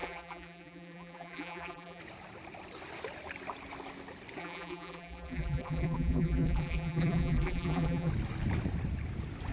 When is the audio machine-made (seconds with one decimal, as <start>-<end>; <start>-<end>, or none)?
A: 0.0-2.0; 4.4-8.1